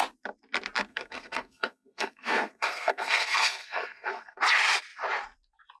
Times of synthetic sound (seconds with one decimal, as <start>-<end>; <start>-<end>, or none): 0.9-4.4